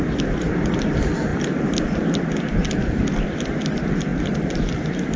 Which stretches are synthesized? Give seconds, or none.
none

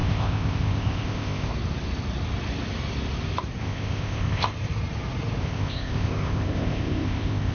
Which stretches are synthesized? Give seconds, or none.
0.0-1.5 (codec, ZipCodec); 3.6-4.5; 5.4-7.5

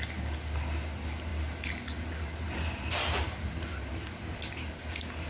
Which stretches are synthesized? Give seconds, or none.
none

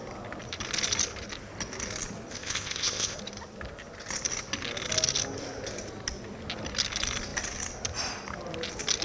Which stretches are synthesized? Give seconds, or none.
2.3-3.2 (codec, ZipCodec)